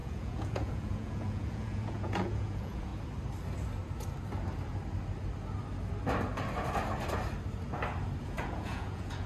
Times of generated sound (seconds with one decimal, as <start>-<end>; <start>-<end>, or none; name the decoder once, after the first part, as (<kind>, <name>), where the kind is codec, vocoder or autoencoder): 0.0-2.9 (vocoder, Vocos); 8.2-9.3